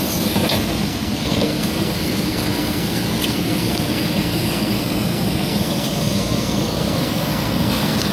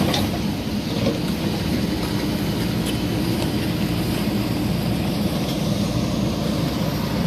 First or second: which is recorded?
second